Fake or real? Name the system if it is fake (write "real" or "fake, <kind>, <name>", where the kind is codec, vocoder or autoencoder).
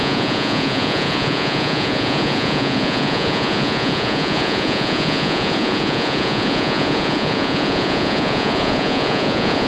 fake, vocoder, Vocos